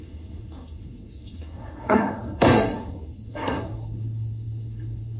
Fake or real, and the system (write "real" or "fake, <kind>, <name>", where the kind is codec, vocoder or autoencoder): fake, codec, SNAC